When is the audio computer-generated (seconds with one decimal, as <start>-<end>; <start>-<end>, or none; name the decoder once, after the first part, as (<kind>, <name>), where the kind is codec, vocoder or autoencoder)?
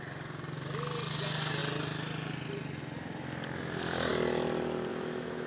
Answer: 4.9-5.5 (autoencoder, DAC-VAE)